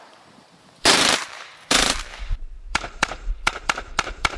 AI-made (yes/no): yes